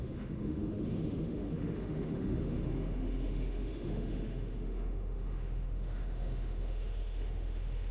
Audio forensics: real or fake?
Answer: fake